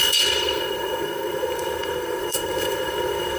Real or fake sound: fake